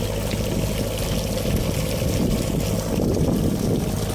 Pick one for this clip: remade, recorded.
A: recorded